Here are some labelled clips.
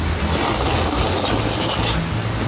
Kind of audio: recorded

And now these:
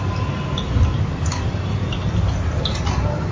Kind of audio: recorded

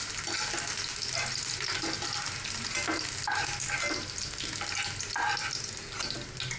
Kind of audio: recorded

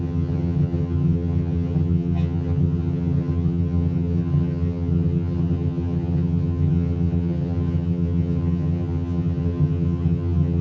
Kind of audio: remade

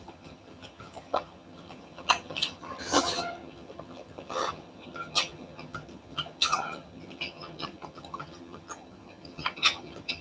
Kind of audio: remade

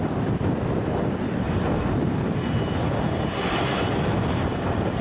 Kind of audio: recorded